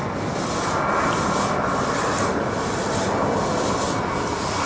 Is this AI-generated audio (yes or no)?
yes